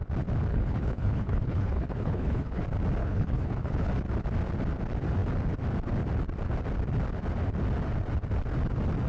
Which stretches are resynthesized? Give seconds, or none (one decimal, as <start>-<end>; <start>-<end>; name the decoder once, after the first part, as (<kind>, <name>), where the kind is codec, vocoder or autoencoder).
0.5-2.6 (codec, HILCodec); 3.0-3.9